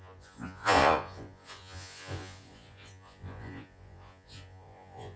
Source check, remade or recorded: remade